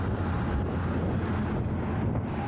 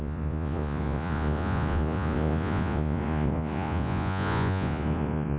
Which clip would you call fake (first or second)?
second